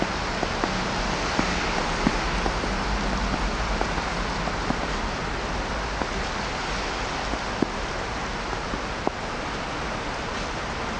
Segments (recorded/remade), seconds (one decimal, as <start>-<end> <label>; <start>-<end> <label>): 0.0-11.0 recorded